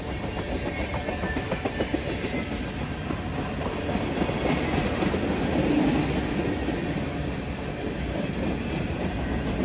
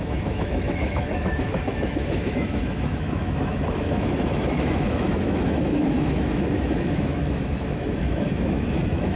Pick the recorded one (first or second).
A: first